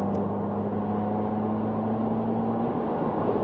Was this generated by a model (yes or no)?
no